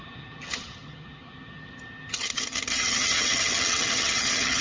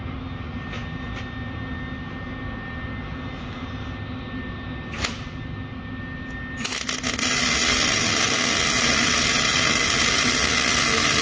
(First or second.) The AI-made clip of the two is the first